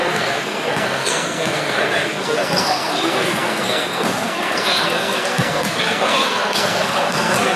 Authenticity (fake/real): fake